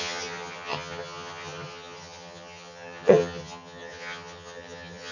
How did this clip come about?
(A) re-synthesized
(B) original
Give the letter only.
A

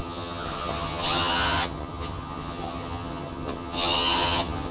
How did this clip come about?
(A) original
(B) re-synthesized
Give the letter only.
B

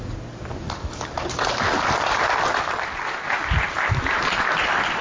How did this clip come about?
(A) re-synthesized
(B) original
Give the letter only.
B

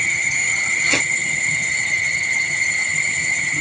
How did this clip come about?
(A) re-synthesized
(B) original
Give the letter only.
A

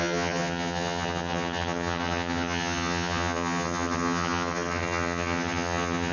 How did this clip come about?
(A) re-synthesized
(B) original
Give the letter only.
A